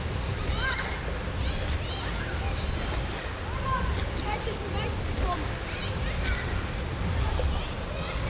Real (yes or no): yes